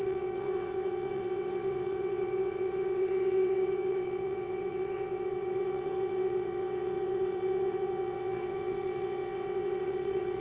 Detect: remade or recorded remade